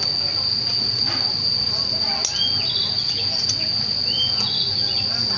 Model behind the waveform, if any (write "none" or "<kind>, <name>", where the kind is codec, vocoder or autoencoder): none